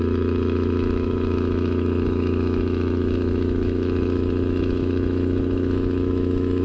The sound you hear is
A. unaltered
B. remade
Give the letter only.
B